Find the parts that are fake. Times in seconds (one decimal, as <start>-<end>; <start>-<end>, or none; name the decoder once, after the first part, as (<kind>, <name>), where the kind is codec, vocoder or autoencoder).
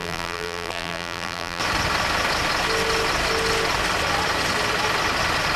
0.0-1.6 (vocoder, BigVGAN v2)